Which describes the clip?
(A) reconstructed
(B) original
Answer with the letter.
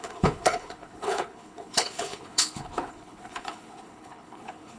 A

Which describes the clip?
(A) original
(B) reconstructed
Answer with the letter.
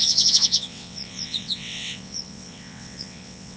B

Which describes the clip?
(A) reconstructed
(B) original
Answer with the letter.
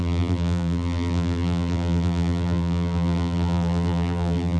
A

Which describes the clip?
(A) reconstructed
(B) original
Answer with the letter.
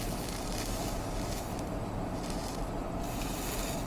B